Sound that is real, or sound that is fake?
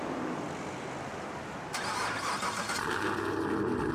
real